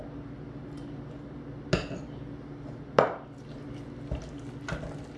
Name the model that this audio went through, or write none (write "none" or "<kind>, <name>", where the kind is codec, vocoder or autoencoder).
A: none